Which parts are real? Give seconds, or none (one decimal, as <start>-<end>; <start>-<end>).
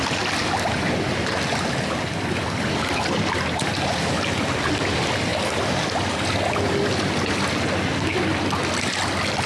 0.0-9.5